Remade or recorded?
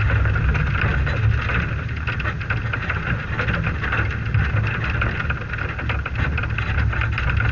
recorded